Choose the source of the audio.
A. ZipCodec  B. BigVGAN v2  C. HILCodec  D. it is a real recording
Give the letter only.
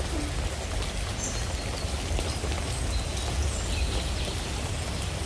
D